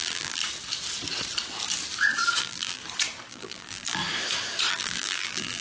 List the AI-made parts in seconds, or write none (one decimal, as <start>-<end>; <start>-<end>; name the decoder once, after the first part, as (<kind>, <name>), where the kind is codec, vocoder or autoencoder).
0.0-0.4 (vocoder, BigVGAN v2); 2.4-2.8; 3.3-4.0; 4.7-5.6